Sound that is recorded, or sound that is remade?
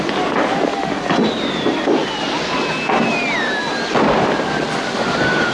recorded